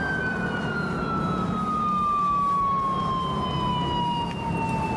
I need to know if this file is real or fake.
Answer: real